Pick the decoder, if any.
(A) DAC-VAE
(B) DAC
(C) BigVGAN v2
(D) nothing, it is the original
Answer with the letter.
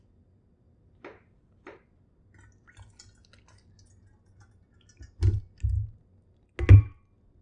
D